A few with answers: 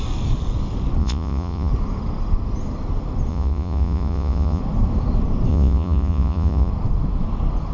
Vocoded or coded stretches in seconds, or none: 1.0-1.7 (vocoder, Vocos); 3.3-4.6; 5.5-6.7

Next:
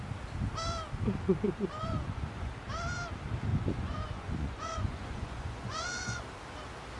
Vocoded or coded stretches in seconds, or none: 1.8-2.5 (vocoder, Vocos); 3.5-6.2